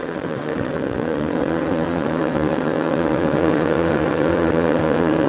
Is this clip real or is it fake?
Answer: fake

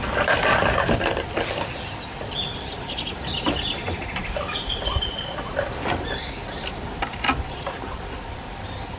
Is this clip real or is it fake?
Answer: real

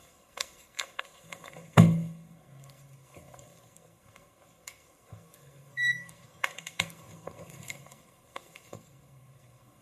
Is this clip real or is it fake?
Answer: fake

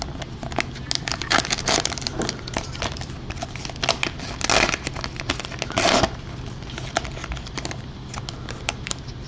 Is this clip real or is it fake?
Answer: real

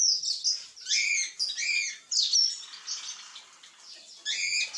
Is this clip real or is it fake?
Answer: real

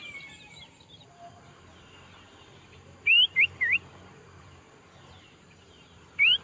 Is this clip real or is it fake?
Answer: fake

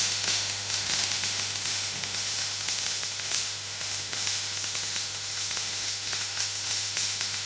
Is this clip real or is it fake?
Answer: fake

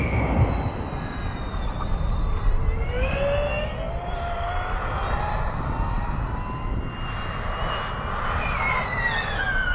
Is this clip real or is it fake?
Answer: real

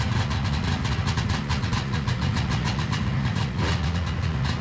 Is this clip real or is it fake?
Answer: fake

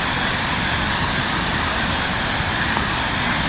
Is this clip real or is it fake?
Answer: real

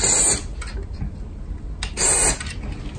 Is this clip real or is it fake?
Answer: real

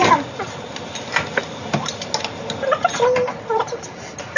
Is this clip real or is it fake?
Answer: real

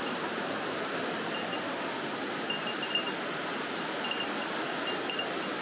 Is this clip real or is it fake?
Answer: real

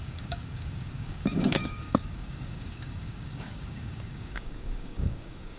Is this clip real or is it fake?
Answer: fake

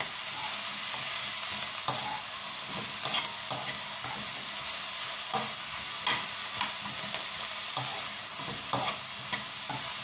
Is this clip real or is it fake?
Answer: real